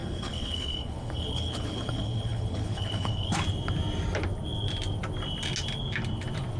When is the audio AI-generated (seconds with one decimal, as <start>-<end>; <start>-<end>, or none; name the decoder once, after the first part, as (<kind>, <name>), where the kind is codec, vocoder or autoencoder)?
0.0-3.3 (codec, HILCodec)